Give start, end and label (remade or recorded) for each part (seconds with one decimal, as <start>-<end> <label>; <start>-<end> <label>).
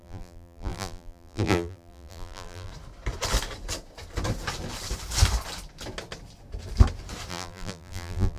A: 0.0-2.7 remade; 2.7-7.3 recorded; 7.3-8.4 remade